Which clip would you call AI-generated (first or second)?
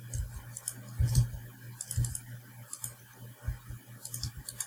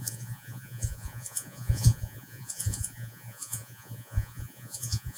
second